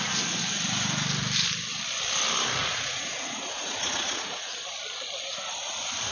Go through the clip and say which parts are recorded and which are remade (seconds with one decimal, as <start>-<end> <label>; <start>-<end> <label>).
0.0-2.6 recorded; 2.6-4.5 remade; 4.5-6.1 recorded